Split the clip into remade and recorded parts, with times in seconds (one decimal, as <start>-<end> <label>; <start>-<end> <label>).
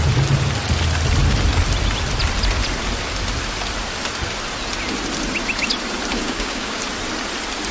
0.0-6.2 recorded; 6.2-6.8 remade; 6.8-7.7 recorded